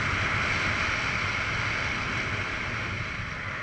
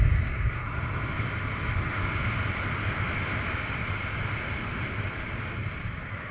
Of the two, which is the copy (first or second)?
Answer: second